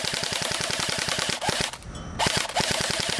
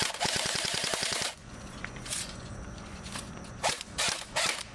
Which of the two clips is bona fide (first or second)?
first